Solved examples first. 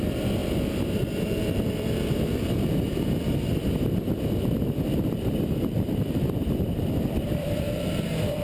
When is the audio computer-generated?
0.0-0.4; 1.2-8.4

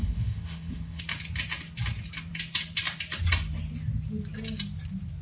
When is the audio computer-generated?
0.0-1.0

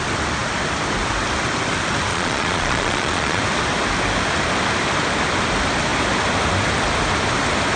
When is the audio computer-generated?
2.1-3.4

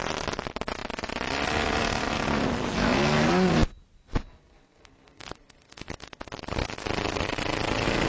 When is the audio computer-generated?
none

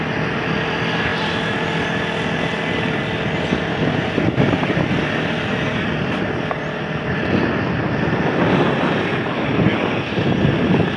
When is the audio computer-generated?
none

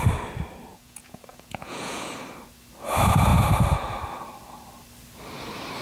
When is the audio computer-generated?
0.7-2.1